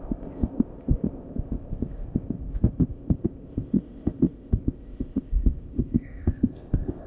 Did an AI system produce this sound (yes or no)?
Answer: yes